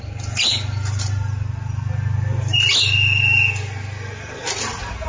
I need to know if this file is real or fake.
real